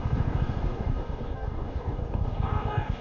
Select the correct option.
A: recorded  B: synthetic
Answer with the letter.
B